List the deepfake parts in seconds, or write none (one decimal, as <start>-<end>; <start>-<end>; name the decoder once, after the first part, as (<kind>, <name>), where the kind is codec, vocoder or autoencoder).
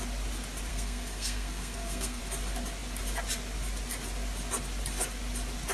0.7-2.2 (codec, SNAC)